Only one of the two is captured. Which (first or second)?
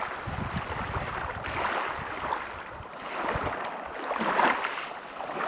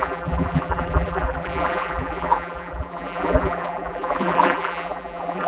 first